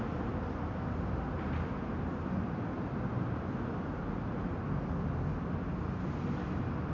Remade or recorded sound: recorded